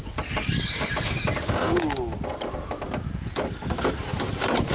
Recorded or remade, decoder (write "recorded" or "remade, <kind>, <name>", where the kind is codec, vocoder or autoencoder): recorded